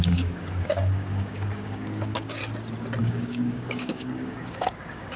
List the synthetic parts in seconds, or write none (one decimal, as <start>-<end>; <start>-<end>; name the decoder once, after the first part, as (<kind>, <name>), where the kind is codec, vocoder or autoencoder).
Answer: 0.0-2.4 (codec, DAC); 3.0-5.2